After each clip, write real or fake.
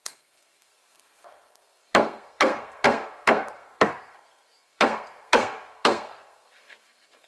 fake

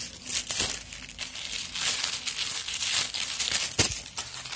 real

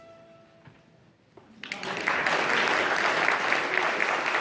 real